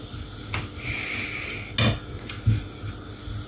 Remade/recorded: recorded